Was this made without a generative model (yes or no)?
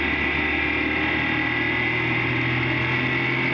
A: yes